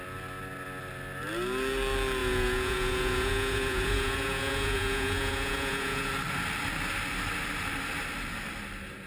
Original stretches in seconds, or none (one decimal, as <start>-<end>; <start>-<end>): 0.0-2.2; 6.1-9.1